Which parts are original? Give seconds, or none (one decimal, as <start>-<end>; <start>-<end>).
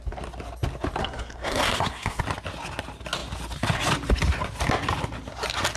0.0-1.0; 2.2-5.8